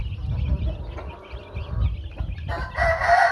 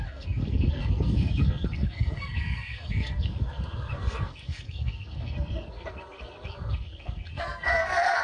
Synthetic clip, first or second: second